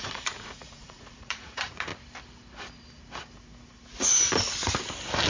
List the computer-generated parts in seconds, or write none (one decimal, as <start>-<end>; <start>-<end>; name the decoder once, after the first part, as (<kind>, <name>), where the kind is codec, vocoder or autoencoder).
0.0-1.9 (vocoder, Vocos)